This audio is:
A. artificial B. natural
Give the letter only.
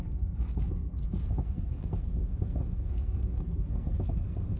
A